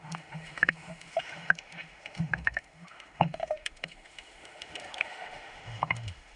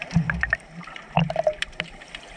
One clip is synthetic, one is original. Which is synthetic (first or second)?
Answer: first